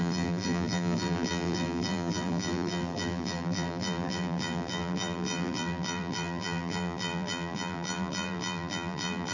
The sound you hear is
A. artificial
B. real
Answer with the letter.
A